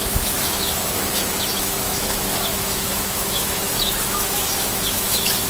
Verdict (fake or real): fake